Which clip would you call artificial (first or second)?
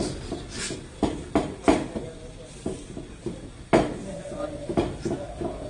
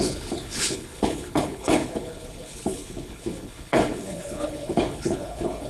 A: second